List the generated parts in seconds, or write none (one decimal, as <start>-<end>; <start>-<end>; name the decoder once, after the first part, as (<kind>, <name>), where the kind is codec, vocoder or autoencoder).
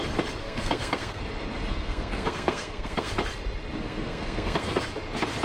0.4-1.2 (codec, SNAC); 1.7-3.1; 3.8-4.8